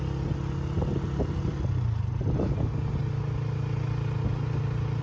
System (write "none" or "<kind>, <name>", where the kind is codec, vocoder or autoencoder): none